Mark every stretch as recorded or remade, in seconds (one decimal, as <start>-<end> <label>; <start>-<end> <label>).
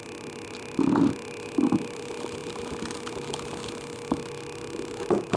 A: 0.0-5.4 recorded